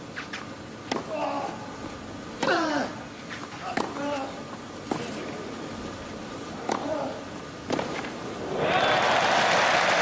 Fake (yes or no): no